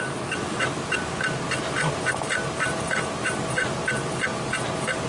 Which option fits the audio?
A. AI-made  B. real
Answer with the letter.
B